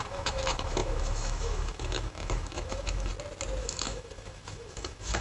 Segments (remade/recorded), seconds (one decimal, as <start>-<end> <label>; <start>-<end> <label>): 0.0-3.1 remade; 3.1-3.6 recorded; 3.6-5.2 remade